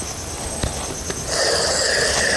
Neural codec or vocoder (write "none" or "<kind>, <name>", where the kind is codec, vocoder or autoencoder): none